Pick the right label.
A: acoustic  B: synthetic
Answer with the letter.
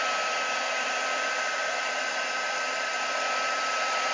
A